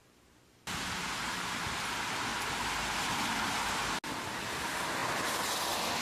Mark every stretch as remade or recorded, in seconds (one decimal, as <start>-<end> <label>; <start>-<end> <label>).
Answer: 0.0-6.0 recorded